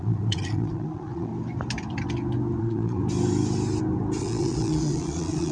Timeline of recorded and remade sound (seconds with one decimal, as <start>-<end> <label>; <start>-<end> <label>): 0.0-1.3 remade; 1.3-2.6 recorded; 2.6-3.0 remade; 3.0-4.2 recorded; 4.2-5.5 remade